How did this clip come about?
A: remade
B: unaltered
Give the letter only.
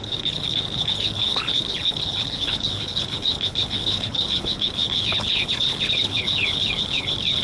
A